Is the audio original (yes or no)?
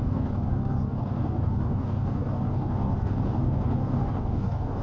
no